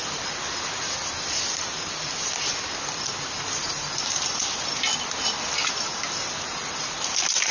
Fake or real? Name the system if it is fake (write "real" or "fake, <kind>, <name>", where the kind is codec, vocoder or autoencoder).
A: real